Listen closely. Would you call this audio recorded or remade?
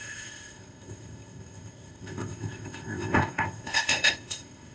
remade